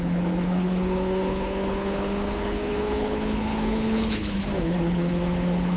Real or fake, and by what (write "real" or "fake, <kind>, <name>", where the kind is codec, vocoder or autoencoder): fake, codec, HILCodec